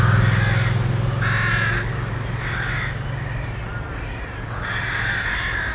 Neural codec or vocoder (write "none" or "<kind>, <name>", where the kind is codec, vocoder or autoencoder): none